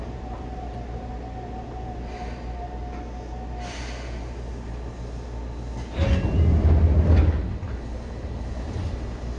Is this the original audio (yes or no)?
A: yes